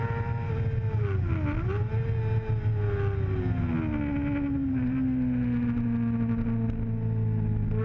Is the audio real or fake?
real